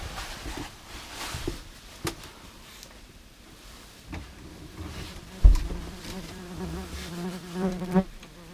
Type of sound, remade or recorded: remade